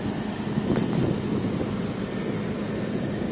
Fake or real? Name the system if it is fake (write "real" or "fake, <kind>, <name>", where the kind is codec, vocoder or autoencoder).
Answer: real